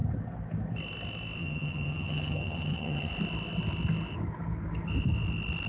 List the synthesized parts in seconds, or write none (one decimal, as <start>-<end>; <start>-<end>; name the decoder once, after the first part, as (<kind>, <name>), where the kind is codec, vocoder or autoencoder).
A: 1.4-3.1 (vocoder, HiFi-GAN)